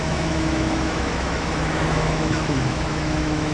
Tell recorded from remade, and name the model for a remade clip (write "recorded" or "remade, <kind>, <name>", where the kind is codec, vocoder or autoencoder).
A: remade, autoencoder, DAC-VAE